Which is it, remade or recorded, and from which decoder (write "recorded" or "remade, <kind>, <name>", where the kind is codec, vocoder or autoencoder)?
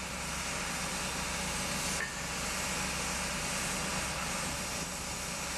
recorded